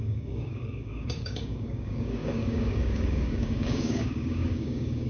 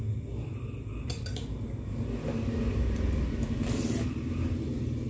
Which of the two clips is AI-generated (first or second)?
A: first